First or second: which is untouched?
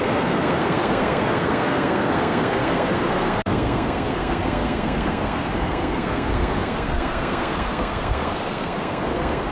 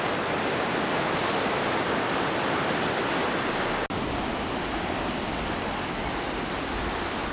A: second